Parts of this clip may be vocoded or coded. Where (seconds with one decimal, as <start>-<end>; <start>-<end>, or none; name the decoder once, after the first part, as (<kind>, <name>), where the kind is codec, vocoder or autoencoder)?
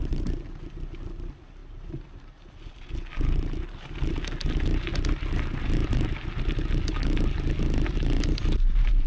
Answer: none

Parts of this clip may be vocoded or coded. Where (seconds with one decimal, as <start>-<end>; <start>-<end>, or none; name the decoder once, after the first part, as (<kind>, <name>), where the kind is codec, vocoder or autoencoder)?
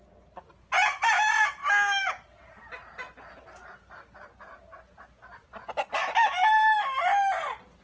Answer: none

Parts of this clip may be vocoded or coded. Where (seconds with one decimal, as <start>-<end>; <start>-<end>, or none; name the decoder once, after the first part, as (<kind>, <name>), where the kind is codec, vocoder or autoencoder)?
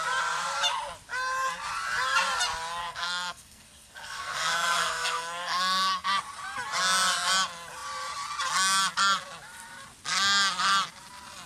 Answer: 2.8-6.2 (codec, SNAC)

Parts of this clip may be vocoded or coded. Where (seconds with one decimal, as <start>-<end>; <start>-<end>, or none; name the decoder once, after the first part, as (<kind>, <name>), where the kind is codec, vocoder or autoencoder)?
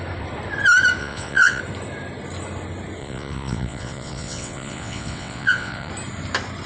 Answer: 1.0-1.6 (vocoder, WaveNeXt); 3.0-5.9